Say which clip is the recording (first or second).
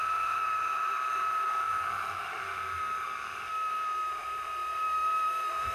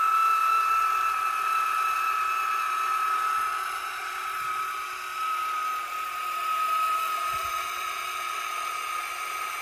second